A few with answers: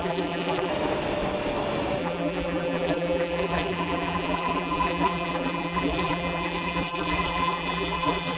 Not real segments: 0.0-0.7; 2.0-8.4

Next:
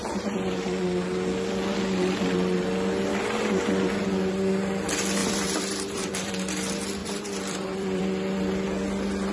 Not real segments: 5.2-6.3; 7.0-8.0

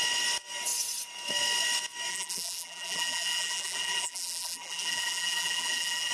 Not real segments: 2.1-6.1

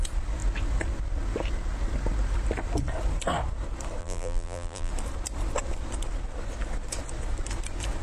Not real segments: 4.0-4.9